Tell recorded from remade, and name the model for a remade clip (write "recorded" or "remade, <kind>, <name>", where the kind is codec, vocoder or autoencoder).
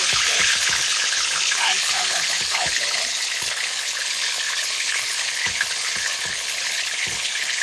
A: remade, codec, HILCodec